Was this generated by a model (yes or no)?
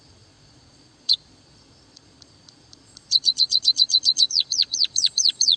yes